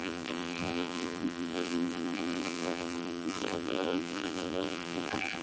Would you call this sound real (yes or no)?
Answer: no